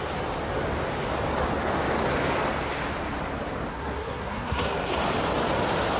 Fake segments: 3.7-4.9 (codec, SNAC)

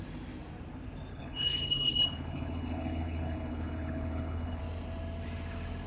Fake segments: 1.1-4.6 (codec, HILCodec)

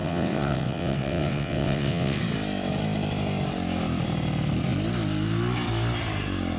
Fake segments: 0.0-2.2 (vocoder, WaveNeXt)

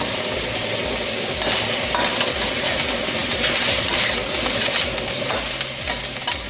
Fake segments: none

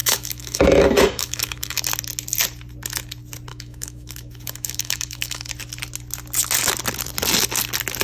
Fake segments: 0.0-1.8 (autoencoder, DAC-VAE); 3.5-5.5

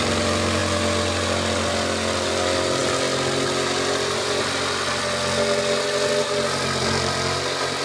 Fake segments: 0.0-0.6 (vocoder, BigVGAN v2); 2.3-2.8; 6.1-7.8

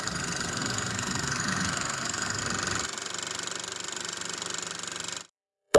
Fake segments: 0.0-2.4 (codec, SNAC); 5.3-5.8

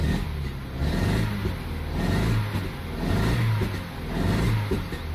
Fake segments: none